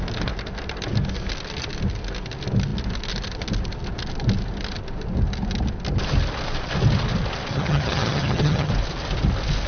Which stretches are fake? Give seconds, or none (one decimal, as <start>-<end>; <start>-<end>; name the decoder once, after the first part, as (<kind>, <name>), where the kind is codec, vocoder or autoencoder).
7.5-8.7 (vocoder, HiFi-GAN)